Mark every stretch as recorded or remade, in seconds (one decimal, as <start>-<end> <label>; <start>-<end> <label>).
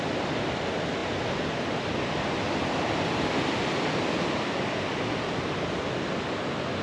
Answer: 0.0-6.8 recorded